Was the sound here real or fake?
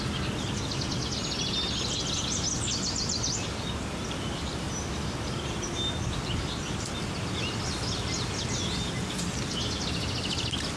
real